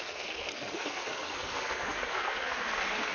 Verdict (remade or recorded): remade